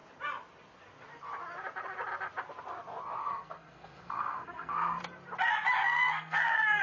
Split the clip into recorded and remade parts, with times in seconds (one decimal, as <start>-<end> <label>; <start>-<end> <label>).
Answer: 0.0-3.2 recorded; 3.2-5.0 remade; 5.0-5.8 recorded; 5.8-6.8 remade